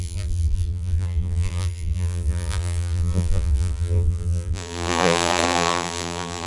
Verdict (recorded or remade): remade